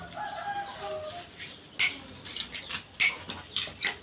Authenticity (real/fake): real